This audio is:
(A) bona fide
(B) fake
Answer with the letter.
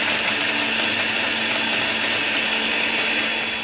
A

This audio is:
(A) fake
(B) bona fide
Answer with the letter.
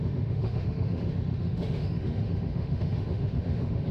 A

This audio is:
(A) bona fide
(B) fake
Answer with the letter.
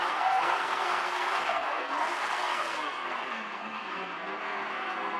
B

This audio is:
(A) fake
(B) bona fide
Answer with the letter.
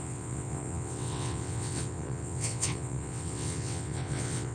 A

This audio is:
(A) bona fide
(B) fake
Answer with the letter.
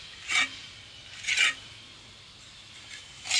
A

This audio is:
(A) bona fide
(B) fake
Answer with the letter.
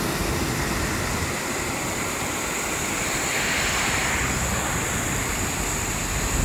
A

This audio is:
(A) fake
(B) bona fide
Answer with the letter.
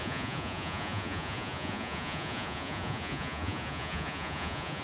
A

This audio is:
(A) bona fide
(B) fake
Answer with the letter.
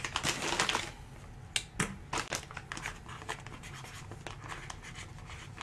A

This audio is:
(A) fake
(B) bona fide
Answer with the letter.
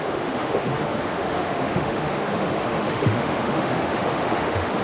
A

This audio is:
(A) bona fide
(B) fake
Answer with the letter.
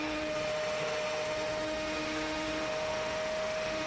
B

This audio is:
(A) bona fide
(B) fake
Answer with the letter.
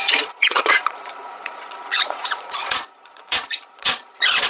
B